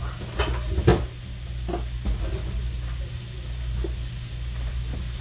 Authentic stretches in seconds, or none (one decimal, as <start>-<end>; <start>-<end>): 0.0-5.2